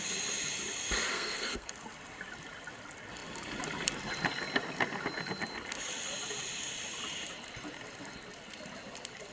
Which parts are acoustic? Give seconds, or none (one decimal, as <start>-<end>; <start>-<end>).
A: 0.0-1.1; 1.7-9.3